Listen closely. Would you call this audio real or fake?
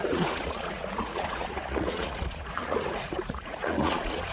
fake